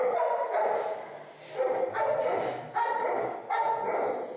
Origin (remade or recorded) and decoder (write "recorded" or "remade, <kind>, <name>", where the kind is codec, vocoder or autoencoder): recorded